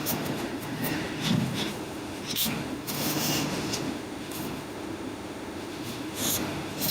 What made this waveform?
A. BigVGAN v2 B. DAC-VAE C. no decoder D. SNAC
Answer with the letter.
B